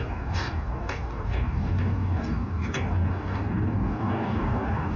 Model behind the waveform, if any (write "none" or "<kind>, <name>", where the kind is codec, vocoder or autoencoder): codec, DAC